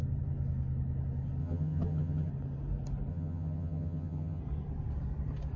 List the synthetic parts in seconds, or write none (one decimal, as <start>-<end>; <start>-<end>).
1.4-2.3; 3.1-4.4